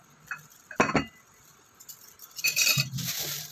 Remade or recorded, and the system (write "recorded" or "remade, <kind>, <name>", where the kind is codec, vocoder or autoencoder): recorded